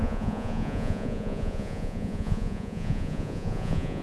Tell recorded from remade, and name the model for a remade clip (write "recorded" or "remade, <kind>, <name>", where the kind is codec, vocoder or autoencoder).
remade, vocoder, Vocos